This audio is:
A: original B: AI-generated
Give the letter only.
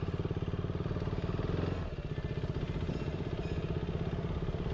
A